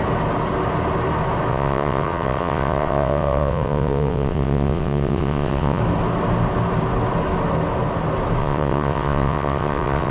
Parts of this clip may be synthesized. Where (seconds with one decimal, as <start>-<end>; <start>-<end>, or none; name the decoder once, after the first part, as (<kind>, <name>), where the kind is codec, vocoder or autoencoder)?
1.5-5.8 (vocoder, WaveNeXt); 8.4-10.1